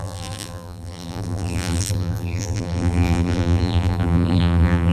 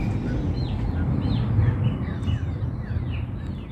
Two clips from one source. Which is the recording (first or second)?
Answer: second